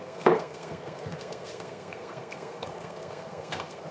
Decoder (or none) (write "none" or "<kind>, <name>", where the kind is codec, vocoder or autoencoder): codec, SNAC